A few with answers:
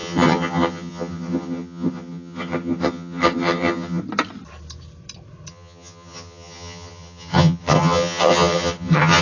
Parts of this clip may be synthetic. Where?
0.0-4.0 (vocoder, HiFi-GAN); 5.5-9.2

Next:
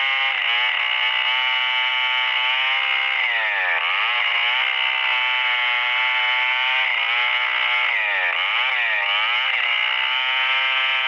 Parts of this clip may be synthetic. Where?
none